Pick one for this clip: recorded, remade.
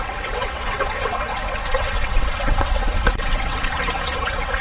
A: remade